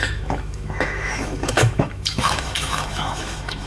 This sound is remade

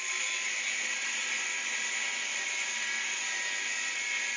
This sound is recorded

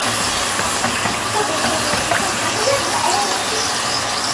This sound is recorded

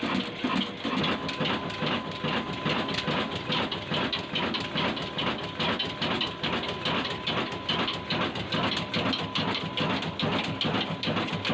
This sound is recorded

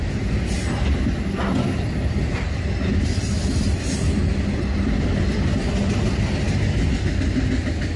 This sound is recorded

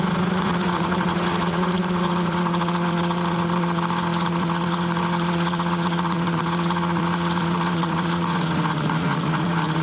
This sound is remade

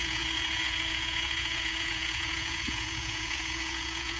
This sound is remade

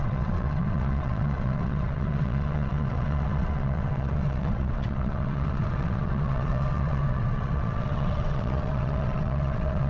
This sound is remade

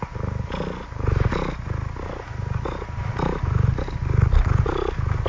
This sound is recorded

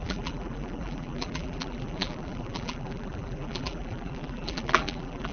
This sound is remade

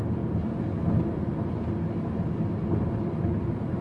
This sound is recorded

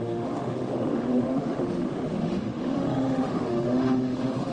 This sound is remade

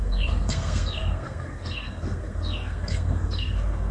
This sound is remade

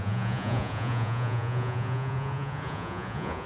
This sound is remade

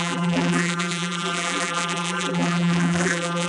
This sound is remade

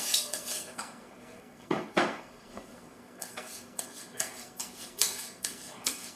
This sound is remade